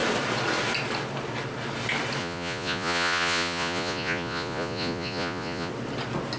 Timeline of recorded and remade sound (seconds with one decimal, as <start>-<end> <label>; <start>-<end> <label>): 0.0-2.2 recorded; 2.2-5.7 remade; 5.7-6.4 recorded